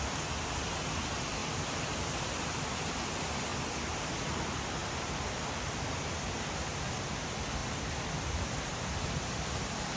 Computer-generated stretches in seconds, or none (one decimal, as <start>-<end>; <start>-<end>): 1.4-2.4; 3.5-4.2; 4.8-7.0; 7.6-8.5